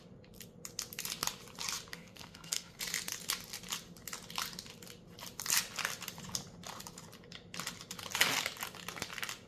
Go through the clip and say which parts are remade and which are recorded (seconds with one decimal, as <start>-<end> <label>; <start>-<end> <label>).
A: 0.0-1.9 recorded; 1.9-2.8 remade; 2.8-9.5 recorded